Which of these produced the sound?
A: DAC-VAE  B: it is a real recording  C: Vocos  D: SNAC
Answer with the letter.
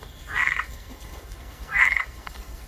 D